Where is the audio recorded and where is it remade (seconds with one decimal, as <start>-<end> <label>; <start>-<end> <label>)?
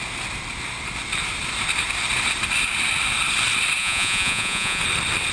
0.0-3.8 recorded; 3.8-4.8 remade; 4.8-5.3 recorded